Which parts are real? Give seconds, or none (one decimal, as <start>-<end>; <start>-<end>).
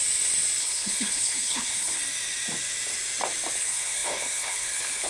0.0-0.6; 2.0-3.6